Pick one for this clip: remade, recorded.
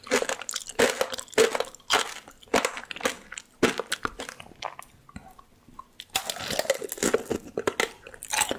recorded